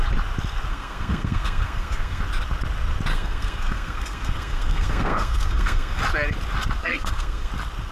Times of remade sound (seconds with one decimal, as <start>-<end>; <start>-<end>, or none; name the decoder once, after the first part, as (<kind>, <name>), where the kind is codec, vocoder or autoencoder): 0.7-2.2 (codec, SNAC); 3.1-6.0; 6.8-7.5

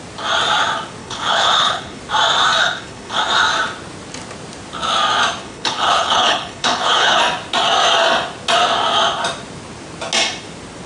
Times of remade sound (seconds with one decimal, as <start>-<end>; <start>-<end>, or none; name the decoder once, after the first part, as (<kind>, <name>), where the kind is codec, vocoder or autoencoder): 1.0-2.0 (codec, HILCodec); 2.6-3.2; 5.4-7.2

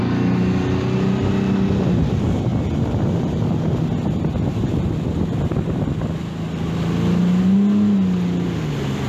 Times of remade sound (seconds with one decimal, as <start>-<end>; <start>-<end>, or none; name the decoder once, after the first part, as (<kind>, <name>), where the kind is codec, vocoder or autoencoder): none

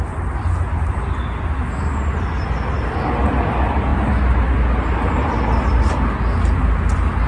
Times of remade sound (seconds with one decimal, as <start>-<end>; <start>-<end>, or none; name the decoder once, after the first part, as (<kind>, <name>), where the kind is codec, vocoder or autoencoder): none

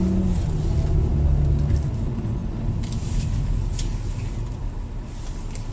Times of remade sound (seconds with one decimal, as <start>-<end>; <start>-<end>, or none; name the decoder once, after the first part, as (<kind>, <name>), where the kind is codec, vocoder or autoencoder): none

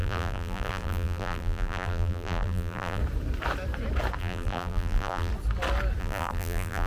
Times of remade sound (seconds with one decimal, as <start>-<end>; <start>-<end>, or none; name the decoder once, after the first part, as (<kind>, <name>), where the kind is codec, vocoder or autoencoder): 0.0-3.0 (vocoder, BigVGAN v2); 4.2-5.3; 6.0-6.9

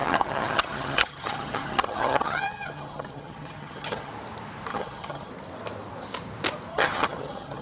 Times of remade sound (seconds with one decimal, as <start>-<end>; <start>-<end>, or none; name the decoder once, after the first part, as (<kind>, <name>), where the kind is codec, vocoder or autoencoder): 0.0-4.1 (vocoder, HiFi-GAN); 4.7-5.3; 6.7-7.6

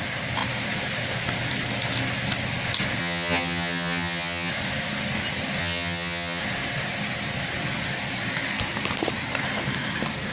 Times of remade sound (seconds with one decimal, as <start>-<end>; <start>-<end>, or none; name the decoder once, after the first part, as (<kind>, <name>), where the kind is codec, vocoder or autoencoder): 3.0-4.5 (vocoder, HiFi-GAN); 5.6-6.4